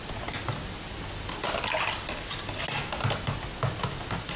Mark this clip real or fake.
real